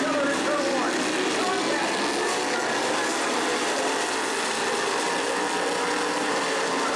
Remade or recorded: recorded